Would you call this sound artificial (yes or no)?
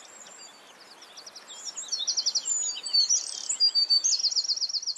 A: no